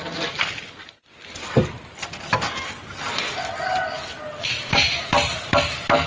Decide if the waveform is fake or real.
real